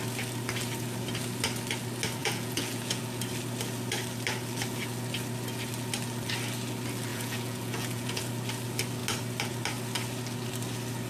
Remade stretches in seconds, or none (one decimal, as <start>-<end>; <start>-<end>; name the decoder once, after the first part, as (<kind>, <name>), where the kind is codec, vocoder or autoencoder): 2.2-3.0 (vocoder, Vocos); 7.1-8.2